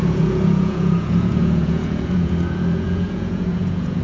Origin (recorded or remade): remade